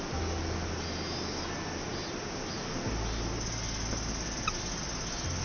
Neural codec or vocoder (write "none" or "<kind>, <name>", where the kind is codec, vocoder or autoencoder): none